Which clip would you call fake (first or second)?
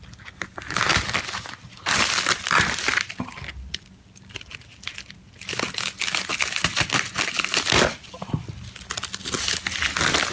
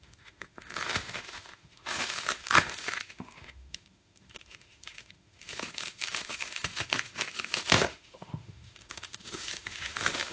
second